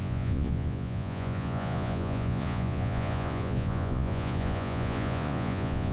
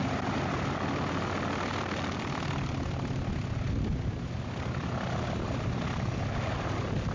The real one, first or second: second